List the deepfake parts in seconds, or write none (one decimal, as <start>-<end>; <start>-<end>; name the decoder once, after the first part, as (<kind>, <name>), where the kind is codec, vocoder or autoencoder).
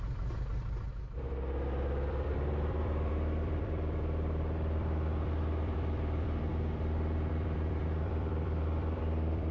0.0-9.5 (vocoder, BigVGAN v2)